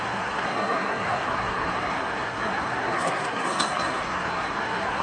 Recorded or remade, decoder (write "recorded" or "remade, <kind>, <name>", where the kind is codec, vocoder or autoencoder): remade, codec, SNAC